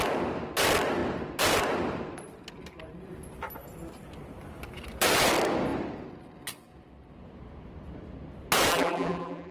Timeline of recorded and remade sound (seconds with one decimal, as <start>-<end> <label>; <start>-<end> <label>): 0.0-8.7 recorded; 8.7-9.5 remade